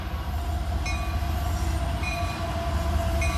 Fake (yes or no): no